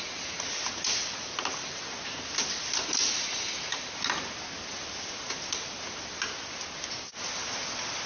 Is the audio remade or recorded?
recorded